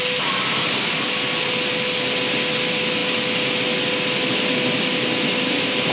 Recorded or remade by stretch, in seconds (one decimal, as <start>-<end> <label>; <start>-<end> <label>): 0.0-5.9 recorded